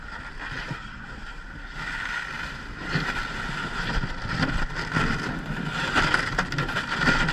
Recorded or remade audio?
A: recorded